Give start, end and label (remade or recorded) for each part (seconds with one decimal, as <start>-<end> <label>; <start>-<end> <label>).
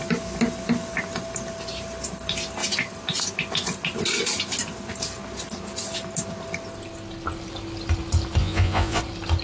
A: 0.0-8.4 recorded; 8.4-9.0 remade; 9.0-9.4 recorded